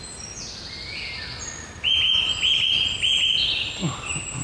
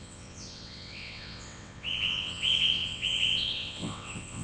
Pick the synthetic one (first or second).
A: second